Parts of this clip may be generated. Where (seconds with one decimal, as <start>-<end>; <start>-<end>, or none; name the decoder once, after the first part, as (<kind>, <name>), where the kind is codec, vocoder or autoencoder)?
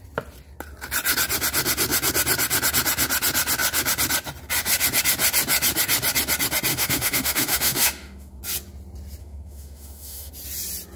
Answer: 6.7-8.4 (autoencoder, DAC-VAE); 9.2-10.3